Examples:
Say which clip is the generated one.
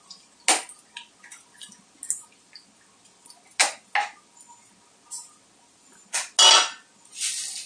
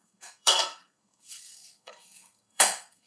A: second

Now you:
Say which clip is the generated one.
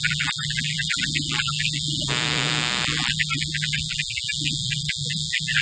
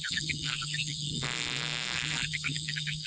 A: second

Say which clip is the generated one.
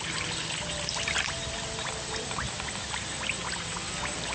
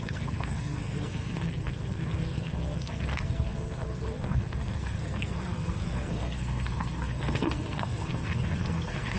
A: second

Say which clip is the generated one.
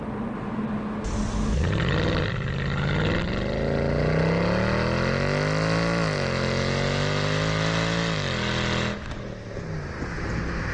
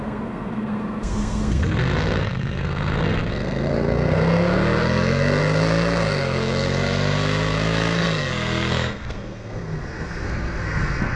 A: second